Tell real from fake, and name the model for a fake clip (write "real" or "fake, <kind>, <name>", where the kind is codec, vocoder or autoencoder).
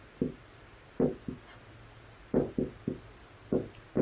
real